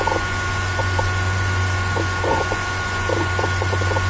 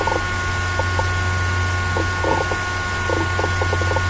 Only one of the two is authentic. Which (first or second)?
second